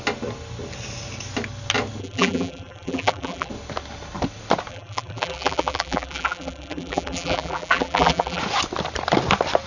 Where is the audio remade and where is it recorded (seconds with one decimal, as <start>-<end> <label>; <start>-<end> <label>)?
0.0-2.0 recorded; 2.0-3.5 remade; 3.5-4.7 recorded; 4.7-8.4 remade; 8.4-9.7 recorded